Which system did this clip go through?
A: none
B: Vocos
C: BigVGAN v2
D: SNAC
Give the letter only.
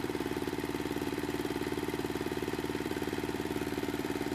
C